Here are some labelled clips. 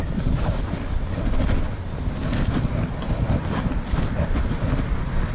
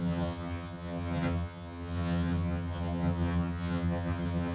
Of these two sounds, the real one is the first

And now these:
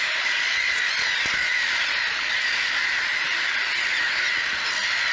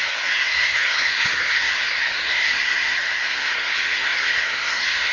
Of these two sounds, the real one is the first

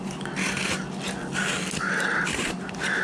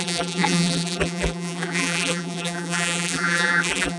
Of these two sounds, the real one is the first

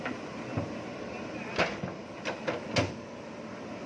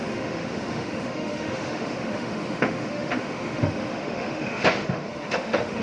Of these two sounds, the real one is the first